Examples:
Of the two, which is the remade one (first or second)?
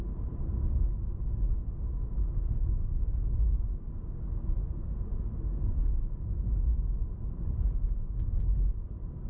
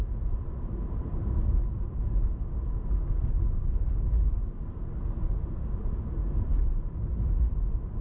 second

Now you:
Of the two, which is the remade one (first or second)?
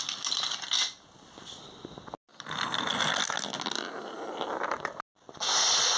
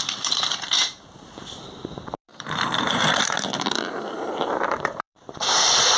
second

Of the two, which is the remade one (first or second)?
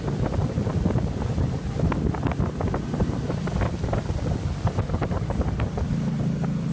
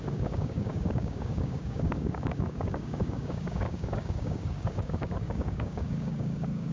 second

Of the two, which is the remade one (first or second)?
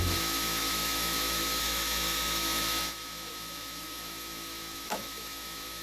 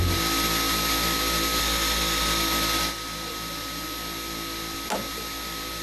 first